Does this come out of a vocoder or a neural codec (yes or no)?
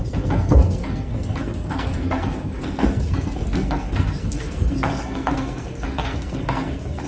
yes